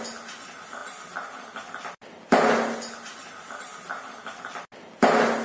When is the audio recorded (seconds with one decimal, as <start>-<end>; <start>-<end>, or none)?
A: 0.0-5.4